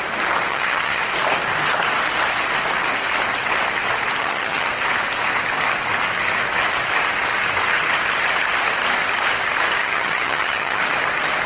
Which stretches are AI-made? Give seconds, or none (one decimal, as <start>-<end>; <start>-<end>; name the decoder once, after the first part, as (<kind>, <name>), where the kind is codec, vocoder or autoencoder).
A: 0.5-1.0 (vocoder, HiFi-GAN); 4.2-4.7; 9.8-10.8

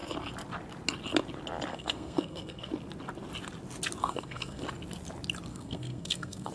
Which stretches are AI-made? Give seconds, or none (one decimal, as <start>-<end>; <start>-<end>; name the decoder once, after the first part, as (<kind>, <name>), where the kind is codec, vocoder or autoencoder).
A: 1.7-2.7 (codec, SNAC); 4.0-4.6; 5.5-6.5